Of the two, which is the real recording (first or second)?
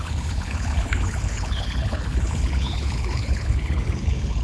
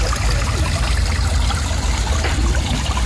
second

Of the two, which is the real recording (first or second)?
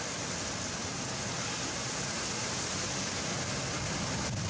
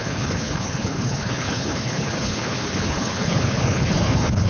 first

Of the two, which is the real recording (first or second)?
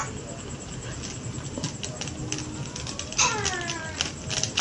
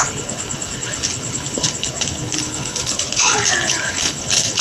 first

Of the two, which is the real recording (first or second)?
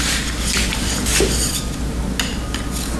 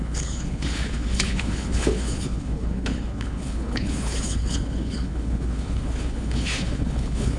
first